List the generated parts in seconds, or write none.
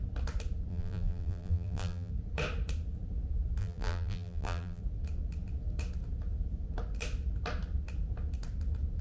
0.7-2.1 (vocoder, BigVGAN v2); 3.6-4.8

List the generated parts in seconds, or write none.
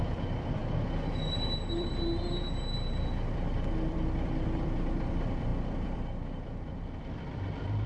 0.0-0.6 (vocoder, BigVGAN v2); 1.7-7.9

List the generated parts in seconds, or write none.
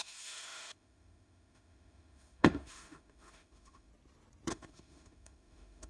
0.0-3.9 (autoencoder, DAC-VAE); 4.5-5.9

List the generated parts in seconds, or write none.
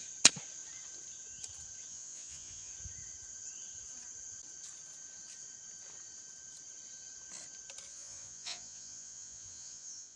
1.9-2.7 (vocoder, Vocos); 7.9-10.2